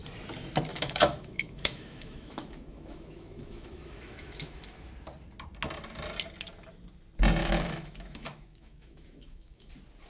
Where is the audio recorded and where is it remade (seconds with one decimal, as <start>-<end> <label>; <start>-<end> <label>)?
0.0-0.7 recorded; 0.7-4.9 remade; 4.9-7.4 recorded; 7.4-9.7 remade; 9.7-10.1 recorded